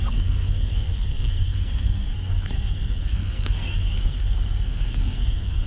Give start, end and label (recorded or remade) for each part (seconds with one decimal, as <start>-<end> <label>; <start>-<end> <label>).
0.0-5.7 remade